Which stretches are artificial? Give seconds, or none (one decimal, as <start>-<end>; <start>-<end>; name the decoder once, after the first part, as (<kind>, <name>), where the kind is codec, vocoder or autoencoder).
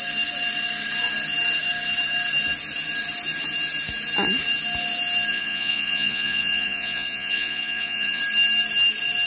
5.3-8.2 (vocoder, Vocos)